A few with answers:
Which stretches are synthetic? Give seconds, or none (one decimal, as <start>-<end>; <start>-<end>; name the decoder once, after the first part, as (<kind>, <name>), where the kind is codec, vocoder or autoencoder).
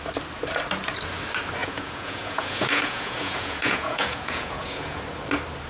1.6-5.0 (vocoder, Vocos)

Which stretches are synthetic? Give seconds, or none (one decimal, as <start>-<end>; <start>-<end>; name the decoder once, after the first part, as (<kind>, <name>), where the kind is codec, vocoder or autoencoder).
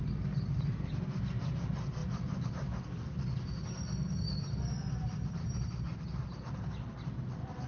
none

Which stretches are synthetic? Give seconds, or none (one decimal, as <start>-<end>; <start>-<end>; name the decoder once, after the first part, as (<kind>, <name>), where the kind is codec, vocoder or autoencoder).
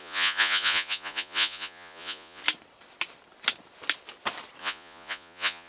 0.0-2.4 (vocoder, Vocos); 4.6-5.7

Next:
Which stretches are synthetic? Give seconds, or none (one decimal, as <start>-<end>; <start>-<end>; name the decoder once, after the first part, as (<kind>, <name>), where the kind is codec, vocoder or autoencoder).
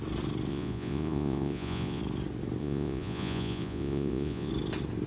0.5-2.0 (vocoder, Vocos); 2.6-4.5